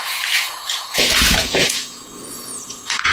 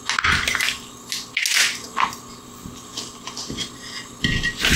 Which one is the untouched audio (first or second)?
second